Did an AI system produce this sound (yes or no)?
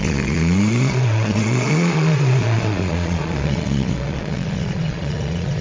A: yes